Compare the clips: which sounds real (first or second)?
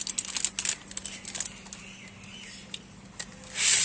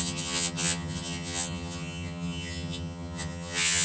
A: first